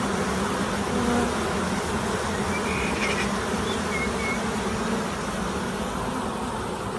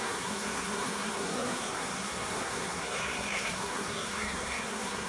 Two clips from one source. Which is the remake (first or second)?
second